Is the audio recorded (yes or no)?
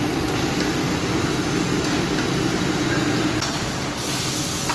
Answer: yes